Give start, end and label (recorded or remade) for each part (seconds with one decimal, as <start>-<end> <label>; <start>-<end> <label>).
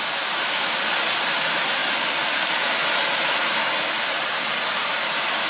0.0-5.5 recorded